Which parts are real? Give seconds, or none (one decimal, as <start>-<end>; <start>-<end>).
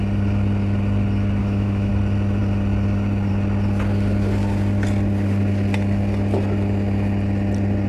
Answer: 0.0-1.4; 1.9-7.9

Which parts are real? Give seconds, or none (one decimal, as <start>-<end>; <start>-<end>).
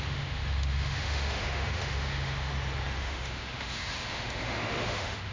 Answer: 2.5-3.0